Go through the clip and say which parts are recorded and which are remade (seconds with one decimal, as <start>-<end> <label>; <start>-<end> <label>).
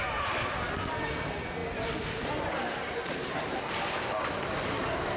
0.0-5.2 recorded